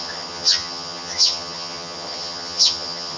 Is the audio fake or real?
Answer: fake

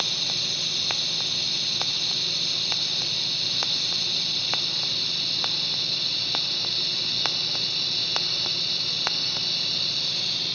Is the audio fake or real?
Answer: real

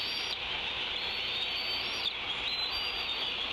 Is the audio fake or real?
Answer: real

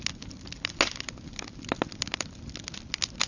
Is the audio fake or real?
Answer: real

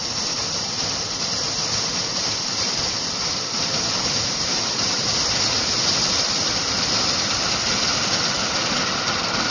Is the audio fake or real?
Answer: real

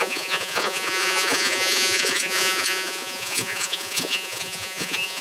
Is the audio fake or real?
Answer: fake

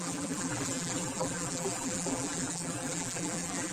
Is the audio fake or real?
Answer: fake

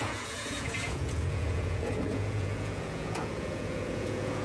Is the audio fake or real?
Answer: fake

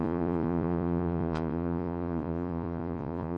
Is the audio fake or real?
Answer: fake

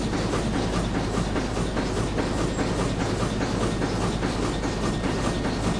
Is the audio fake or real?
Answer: real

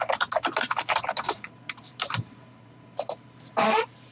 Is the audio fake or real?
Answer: fake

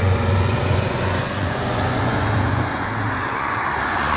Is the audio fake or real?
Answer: fake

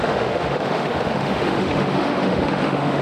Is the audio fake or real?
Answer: fake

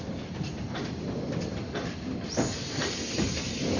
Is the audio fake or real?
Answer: real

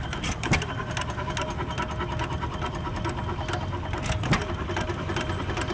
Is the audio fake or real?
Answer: real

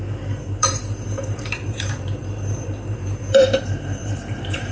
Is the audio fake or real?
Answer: fake